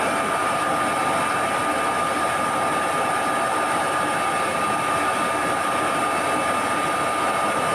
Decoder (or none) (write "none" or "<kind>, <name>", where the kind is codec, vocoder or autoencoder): none